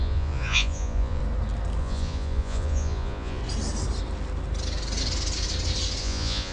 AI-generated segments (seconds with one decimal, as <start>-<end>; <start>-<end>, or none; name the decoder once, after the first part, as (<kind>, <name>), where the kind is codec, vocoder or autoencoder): 0.0-1.2 (vocoder, Vocos); 1.8-3.4; 6.0-6.5